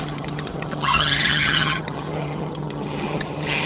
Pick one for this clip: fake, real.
fake